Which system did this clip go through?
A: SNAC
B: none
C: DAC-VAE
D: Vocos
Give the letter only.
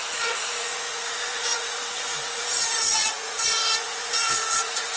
D